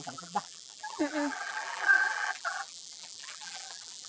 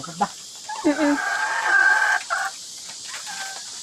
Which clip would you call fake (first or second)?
first